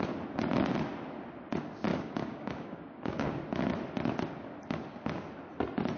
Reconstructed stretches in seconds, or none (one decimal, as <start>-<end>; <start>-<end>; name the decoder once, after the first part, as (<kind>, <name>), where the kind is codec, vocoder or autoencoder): 1.9-3.4 (codec, DAC)